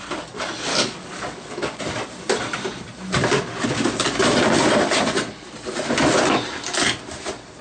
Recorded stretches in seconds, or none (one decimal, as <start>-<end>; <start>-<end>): 0.0-0.7; 1.8-7.6